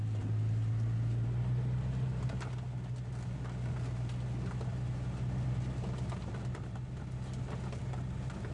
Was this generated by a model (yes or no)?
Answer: no